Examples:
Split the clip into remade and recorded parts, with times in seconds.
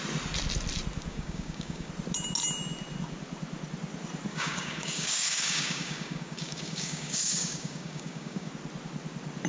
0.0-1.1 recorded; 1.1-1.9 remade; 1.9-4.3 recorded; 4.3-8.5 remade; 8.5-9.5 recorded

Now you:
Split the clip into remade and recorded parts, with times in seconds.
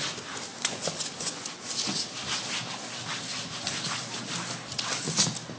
0.0-0.5 recorded; 0.5-1.7 remade; 1.7-5.6 recorded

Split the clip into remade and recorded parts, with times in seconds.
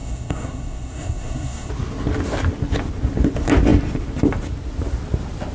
0.0-1.7 remade; 1.7-5.5 recorded